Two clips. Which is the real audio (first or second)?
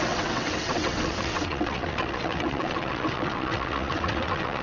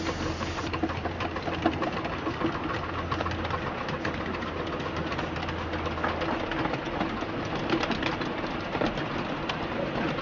second